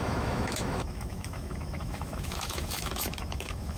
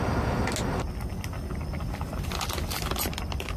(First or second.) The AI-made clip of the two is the first